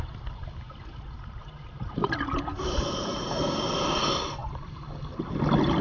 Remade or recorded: recorded